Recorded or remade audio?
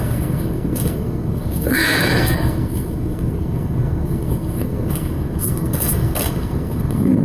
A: remade